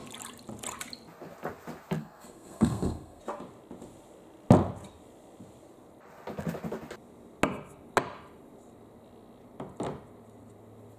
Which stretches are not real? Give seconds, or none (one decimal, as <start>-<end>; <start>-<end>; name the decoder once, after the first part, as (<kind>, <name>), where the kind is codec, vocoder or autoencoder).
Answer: 2.0-3.2 (codec, SNAC)